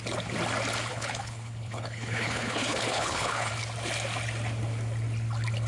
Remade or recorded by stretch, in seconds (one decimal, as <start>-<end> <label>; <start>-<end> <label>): 0.0-0.9 recorded; 0.9-3.5 remade; 3.5-5.7 recorded